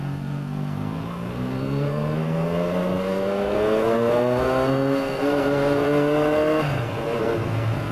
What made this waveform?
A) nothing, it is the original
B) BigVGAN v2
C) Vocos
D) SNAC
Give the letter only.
D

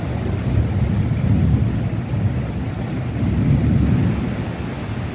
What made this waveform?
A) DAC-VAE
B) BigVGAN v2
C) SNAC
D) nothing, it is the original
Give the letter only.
D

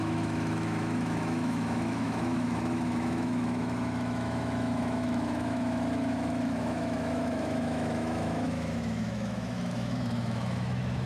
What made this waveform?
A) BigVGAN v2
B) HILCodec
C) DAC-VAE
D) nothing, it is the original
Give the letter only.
C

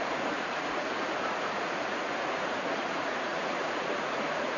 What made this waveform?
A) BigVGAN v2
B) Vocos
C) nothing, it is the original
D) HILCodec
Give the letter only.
B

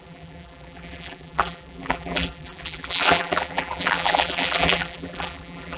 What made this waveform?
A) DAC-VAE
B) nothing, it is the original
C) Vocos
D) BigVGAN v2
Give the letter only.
D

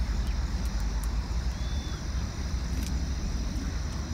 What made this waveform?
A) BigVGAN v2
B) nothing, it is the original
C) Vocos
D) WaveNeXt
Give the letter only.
B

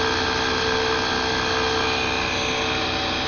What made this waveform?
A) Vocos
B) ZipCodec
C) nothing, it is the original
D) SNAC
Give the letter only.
C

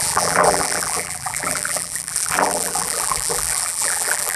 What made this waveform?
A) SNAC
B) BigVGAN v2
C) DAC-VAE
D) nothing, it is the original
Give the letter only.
B